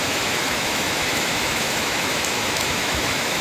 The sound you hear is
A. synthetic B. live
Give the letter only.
A